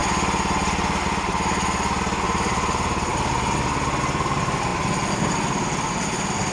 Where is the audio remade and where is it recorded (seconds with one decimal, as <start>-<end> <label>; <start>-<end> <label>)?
0.0-6.5 recorded